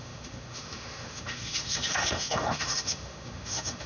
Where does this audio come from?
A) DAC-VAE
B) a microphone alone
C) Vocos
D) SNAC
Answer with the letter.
A